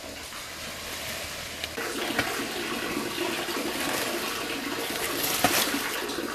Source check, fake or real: real